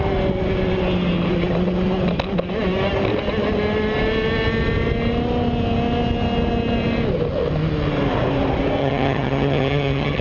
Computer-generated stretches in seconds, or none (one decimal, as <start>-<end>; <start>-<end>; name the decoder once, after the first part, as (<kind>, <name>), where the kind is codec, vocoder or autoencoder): 8.8-10.2 (vocoder, HiFi-GAN)